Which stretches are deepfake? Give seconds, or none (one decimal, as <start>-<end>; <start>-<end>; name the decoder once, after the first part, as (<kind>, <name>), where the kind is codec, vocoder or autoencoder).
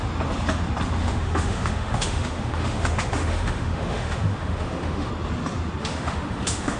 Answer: 1.0-5.1 (autoencoder, DAC-VAE); 5.8-6.8